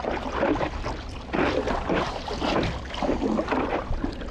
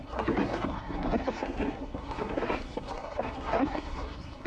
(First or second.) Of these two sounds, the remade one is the second